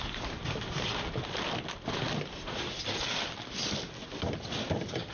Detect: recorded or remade recorded